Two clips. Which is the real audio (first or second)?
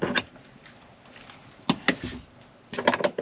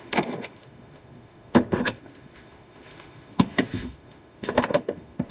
first